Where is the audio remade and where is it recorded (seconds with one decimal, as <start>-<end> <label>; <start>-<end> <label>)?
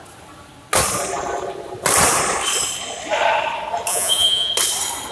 0.0-3.9 recorded; 3.9-4.5 remade; 4.5-5.1 recorded